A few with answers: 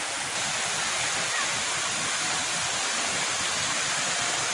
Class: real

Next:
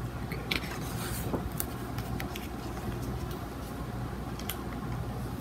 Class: real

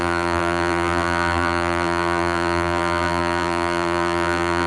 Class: fake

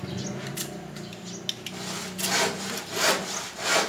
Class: real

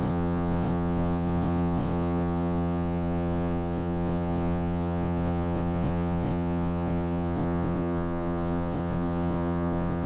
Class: fake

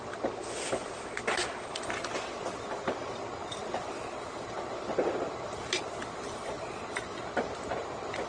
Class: real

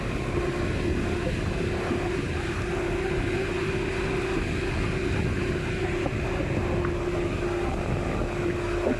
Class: real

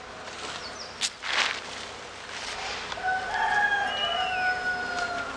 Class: real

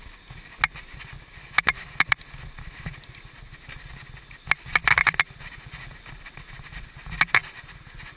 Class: real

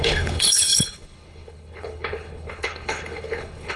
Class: fake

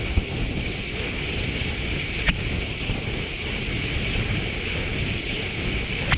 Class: real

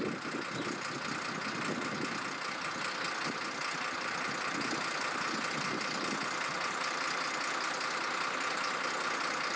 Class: real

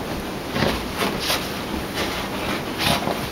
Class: real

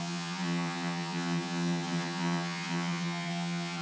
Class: fake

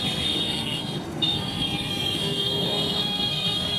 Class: fake